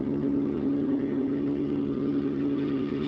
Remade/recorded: remade